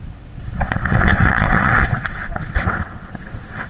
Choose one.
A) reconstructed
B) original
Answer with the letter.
A